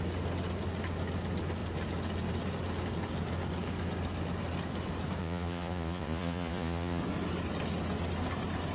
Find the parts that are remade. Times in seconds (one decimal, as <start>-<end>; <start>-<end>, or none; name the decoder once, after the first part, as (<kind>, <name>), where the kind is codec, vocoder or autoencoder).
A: 5.2-7.0 (vocoder, Vocos)